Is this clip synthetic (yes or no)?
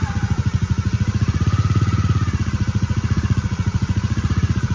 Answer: yes